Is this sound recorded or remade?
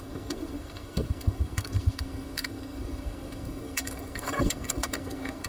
remade